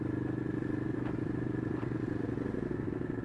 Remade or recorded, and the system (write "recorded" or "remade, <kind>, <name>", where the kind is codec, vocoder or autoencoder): recorded